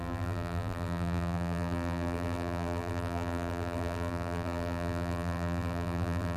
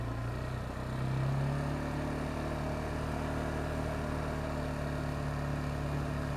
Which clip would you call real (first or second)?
second